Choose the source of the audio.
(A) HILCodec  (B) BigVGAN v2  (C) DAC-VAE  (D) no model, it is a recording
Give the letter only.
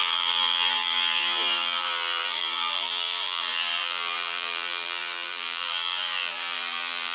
B